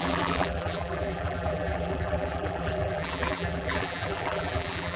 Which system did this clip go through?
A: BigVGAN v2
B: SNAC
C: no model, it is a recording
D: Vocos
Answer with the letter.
A